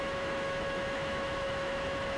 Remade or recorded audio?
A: remade